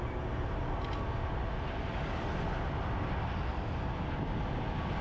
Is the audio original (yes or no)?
yes